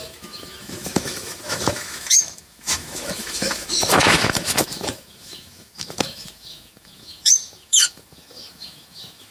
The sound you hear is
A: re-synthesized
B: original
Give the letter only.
A